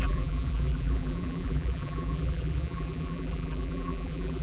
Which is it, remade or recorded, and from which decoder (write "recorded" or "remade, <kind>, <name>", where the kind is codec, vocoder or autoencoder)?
remade, vocoder, BigVGAN v2